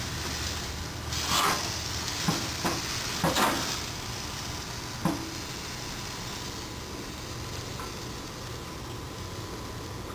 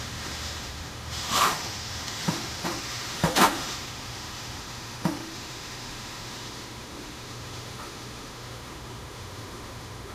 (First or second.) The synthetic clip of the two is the second